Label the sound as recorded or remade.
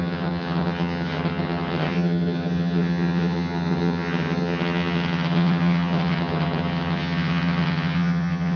remade